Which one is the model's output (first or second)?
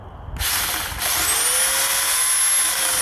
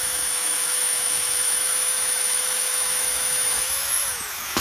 second